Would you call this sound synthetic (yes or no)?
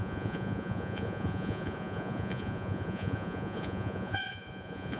yes